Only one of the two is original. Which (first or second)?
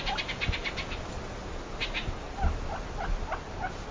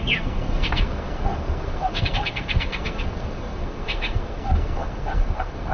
first